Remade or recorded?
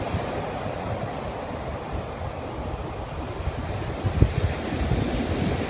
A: recorded